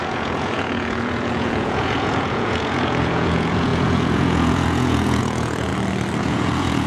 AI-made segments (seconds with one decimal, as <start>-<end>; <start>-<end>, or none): 0.0-5.7; 6.2-6.9